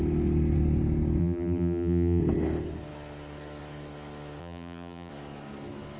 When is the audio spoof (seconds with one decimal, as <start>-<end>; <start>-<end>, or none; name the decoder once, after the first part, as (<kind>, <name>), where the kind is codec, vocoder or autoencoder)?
1.2-2.2 (vocoder, BigVGAN v2); 4.4-5.1